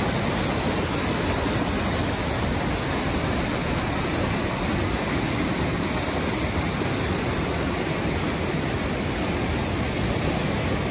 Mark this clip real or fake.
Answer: real